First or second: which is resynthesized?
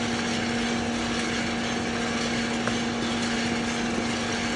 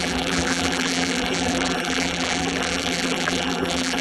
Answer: second